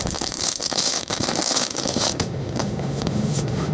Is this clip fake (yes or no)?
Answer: yes